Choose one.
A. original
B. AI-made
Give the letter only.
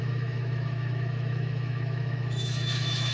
B